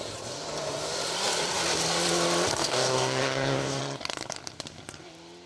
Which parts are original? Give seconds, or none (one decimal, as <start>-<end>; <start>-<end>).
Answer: 0.0-2.6; 3.8-5.5